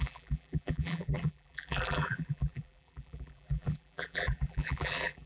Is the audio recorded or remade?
remade